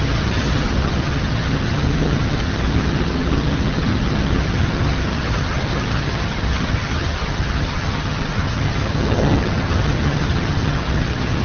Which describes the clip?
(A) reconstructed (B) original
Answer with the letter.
A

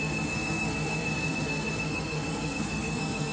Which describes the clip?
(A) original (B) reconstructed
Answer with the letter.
B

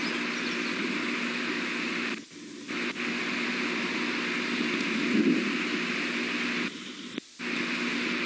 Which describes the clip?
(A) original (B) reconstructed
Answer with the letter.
A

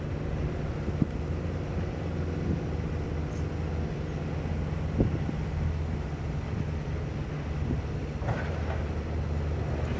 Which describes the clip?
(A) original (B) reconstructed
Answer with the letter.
A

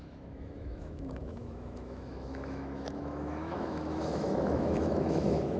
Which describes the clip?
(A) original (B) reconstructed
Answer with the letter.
B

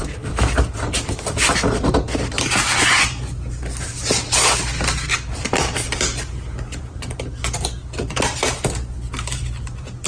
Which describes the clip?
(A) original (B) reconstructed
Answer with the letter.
A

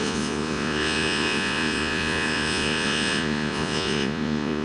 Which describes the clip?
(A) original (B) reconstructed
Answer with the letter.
B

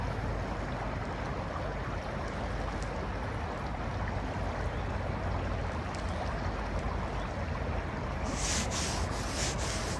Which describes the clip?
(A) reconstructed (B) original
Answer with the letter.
B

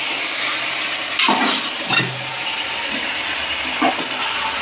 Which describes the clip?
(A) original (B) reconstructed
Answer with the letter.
A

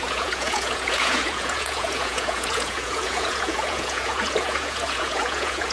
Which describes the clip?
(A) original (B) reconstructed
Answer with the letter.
B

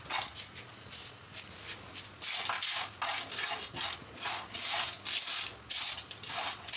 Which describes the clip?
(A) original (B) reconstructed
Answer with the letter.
A